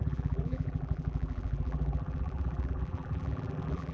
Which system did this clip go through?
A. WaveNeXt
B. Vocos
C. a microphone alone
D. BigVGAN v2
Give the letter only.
D